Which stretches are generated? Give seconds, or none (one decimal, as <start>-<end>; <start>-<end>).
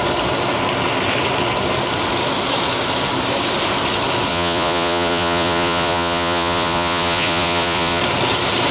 4.3-8.0